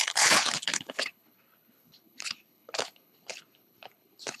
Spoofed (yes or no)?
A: yes